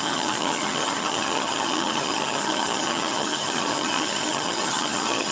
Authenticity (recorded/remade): remade